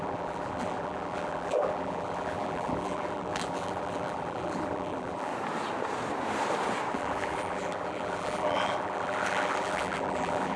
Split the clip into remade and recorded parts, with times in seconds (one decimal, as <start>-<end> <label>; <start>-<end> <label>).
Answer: 0.0-5.3 remade; 5.3-6.9 recorded; 6.9-10.6 remade